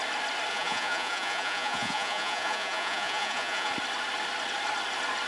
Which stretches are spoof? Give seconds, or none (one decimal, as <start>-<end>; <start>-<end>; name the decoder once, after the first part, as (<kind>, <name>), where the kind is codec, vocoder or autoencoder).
0.5-3.7 (vocoder, Vocos)